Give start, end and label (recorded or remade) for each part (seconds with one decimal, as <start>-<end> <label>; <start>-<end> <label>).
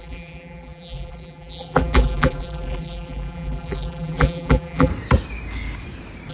0.0-4.9 remade; 4.9-6.3 recorded